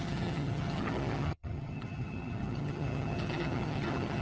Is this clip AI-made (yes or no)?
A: yes